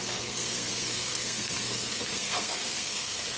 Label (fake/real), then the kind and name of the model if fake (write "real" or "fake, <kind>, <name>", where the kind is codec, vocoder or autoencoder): fake, codec, SNAC